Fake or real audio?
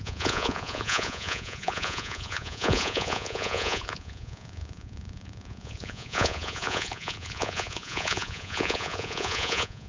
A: fake